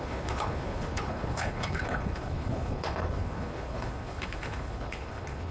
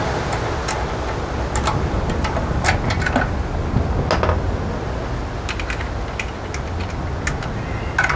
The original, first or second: second